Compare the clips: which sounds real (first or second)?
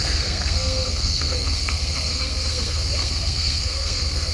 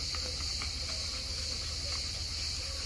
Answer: second